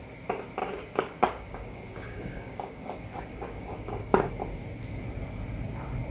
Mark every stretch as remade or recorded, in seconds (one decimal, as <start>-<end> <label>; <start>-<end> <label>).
0.0-0.6 recorded; 0.6-4.3 remade; 4.3-6.1 recorded